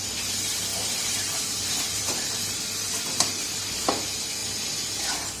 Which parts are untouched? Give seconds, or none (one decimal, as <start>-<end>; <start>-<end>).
0.0-0.7; 3.6-5.4